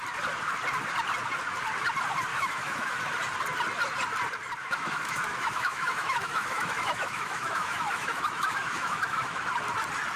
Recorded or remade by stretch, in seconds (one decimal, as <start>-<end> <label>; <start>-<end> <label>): 0.0-2.3 recorded; 2.3-3.0 remade; 3.0-4.6 recorded; 4.6-9.5 remade; 9.5-10.2 recorded